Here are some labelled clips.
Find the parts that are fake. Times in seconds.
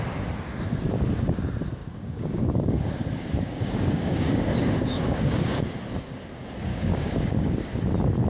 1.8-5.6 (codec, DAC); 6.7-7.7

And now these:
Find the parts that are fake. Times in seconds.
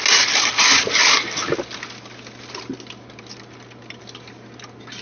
none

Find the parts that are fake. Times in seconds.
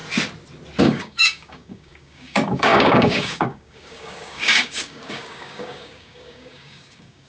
0.8-7.3 (codec, DAC)